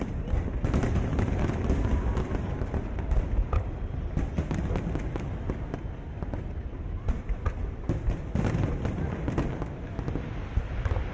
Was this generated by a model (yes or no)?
no